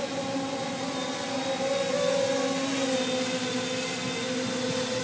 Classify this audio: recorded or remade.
recorded